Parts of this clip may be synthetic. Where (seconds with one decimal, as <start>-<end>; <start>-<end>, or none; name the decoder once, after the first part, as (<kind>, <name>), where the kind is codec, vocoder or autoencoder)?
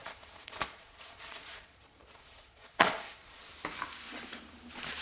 0.0-3.5 (vocoder, Vocos)